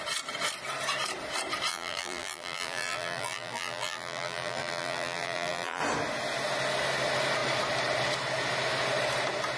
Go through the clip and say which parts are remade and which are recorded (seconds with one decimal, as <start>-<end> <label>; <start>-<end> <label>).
0.0-1.7 recorded; 1.7-5.8 remade; 5.8-9.6 recorded